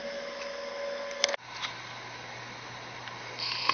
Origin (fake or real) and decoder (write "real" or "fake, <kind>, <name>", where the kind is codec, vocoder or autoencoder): real